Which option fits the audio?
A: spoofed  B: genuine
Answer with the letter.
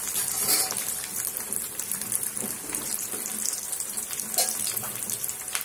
A